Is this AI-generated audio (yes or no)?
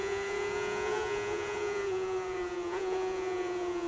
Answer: yes